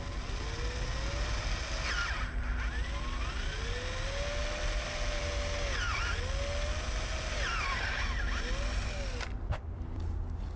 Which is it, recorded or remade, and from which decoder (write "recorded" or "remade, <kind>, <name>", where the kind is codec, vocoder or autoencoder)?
recorded